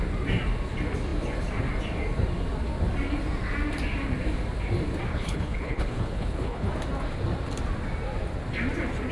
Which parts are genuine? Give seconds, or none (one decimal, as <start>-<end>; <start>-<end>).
0.0-5.1; 6.7-9.1